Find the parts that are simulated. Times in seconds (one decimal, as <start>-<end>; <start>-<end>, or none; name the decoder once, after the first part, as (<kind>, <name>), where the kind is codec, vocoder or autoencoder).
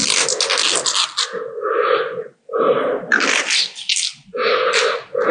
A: none